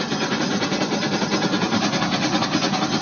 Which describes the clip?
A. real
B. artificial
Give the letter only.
A